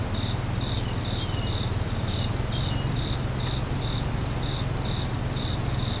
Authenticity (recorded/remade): recorded